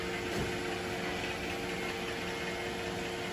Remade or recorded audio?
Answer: recorded